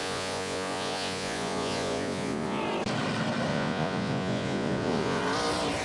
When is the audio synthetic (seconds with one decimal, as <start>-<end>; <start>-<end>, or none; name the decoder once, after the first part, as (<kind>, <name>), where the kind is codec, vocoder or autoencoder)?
0.0-2.6 (vocoder, Vocos); 3.5-5.2